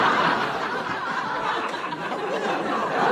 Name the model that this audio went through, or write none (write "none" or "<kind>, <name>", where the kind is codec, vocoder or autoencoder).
vocoder, BigVGAN v2